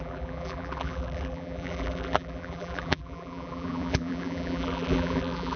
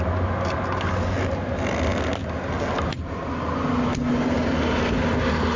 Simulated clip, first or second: first